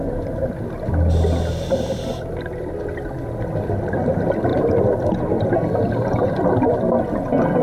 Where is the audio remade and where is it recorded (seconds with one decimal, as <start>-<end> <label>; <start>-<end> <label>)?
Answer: 0.0-7.6 recorded